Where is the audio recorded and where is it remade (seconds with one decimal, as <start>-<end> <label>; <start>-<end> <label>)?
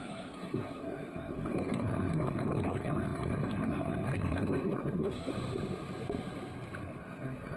0.0-5.3 remade; 5.3-7.0 recorded; 7.0-7.6 remade